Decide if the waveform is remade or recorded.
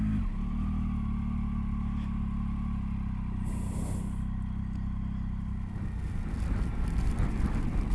recorded